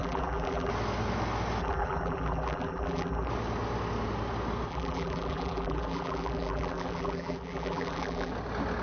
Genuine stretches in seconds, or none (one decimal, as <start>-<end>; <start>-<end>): 0.7-1.6; 3.3-4.7; 8.3-8.8